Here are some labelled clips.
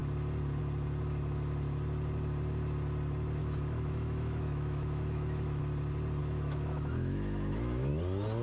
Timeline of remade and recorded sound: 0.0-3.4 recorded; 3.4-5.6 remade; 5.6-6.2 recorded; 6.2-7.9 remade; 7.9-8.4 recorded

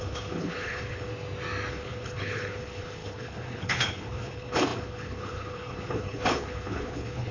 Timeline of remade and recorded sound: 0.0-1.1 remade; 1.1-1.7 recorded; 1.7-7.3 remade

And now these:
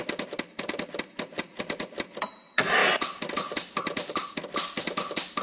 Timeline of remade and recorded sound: 0.0-1.5 remade; 1.5-2.3 recorded; 2.3-2.8 remade; 2.8-3.3 recorded; 3.3-4.2 remade; 4.2-5.4 recorded

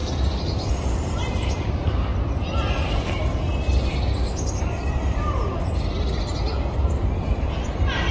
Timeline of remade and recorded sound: 0.0-2.1 remade; 2.1-6.7 recorded; 6.7-8.1 remade

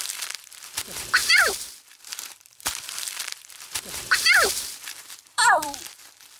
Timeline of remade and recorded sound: 0.0-6.4 remade

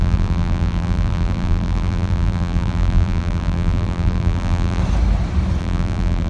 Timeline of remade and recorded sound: 0.0-4.8 remade; 4.8-5.6 recorded; 5.6-6.3 remade

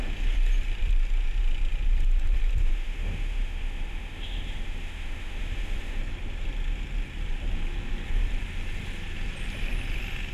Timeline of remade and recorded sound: 0.0-2.6 recorded; 2.6-6.0 remade; 6.0-10.3 recorded